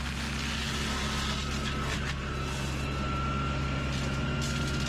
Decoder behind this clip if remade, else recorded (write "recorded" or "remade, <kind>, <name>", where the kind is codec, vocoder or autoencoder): recorded